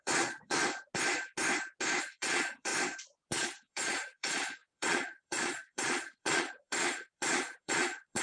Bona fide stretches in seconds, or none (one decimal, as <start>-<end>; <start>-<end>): 0.6-2.0; 2.7-3.3